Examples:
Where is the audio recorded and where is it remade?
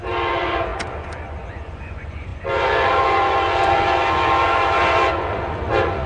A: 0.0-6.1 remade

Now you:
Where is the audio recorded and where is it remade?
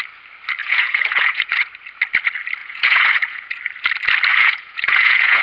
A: 0.0-0.6 recorded; 0.6-1.7 remade; 1.7-2.6 recorded; 2.6-3.5 remade; 3.5-4.3 recorded; 4.3-5.4 remade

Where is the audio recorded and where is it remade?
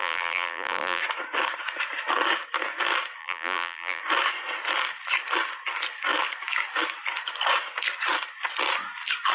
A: 0.0-1.0 remade; 1.0-3.2 recorded; 3.2-4.0 remade; 4.0-9.3 recorded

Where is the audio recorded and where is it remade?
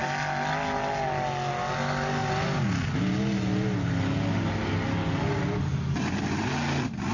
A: 0.0-7.1 recorded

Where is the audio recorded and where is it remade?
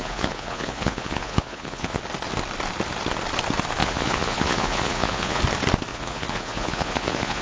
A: 0.0-2.0 remade; 2.0-3.8 recorded; 3.8-5.4 remade; 5.4-5.9 recorded; 5.9-7.4 remade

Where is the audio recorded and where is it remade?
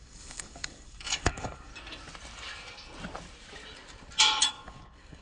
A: 0.0-1.7 remade; 1.7-4.5 recorded; 4.5-5.2 remade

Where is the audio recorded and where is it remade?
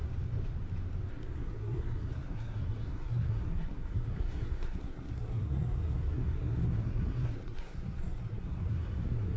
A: 0.0-1.1 recorded; 1.1-9.4 remade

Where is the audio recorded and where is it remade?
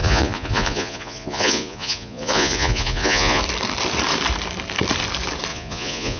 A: 0.0-3.4 remade; 3.4-5.5 recorded; 5.5-6.2 remade